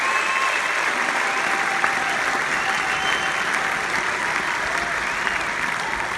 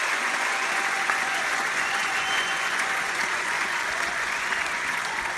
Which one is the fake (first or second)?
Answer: second